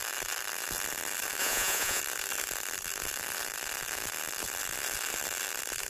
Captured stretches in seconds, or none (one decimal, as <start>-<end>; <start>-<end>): 0.0-1.4; 2.0-5.9